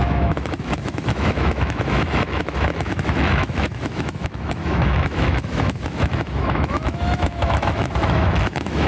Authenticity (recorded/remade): remade